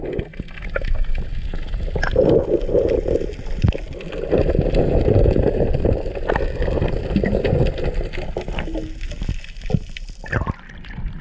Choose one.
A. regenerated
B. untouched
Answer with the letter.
B